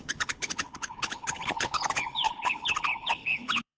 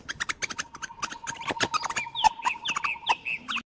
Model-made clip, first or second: first